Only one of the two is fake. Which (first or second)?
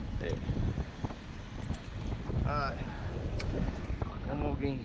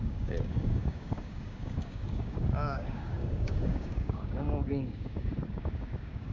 second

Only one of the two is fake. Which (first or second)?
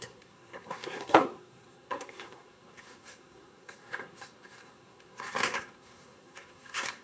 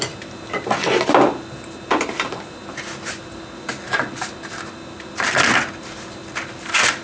first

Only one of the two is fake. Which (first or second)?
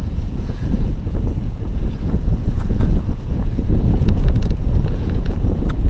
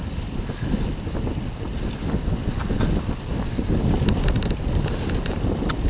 first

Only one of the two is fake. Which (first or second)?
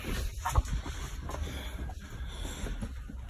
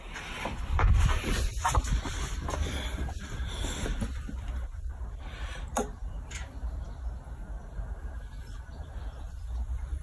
second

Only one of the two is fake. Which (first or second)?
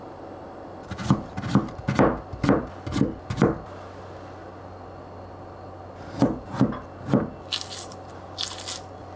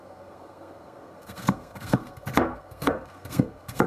second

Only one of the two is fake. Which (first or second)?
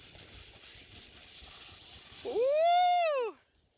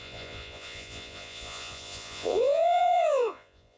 second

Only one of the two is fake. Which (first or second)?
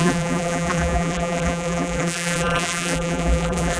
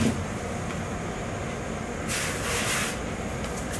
first